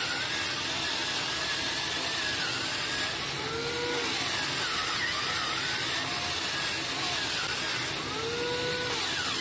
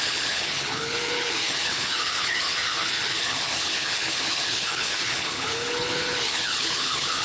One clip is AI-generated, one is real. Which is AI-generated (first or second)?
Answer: second